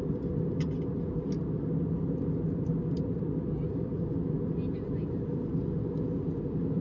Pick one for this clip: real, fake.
real